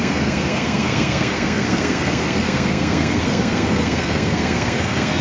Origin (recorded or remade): remade